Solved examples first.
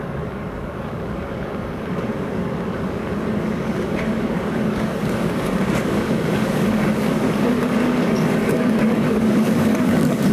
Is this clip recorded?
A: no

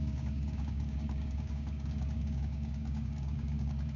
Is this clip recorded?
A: no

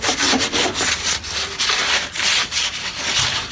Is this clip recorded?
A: yes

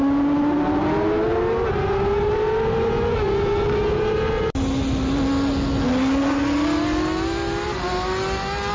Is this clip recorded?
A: yes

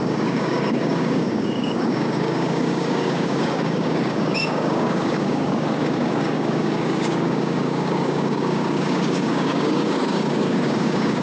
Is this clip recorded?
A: no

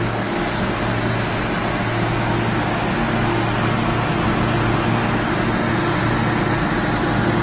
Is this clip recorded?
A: yes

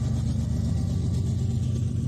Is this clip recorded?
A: yes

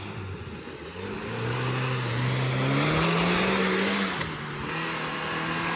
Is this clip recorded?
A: yes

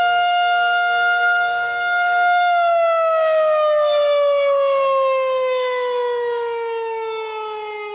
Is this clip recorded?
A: no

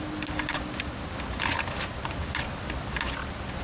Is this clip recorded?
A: yes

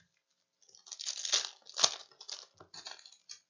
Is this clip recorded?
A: yes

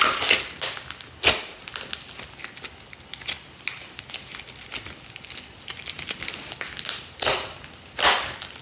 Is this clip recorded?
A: yes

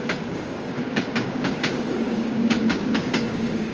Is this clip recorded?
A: no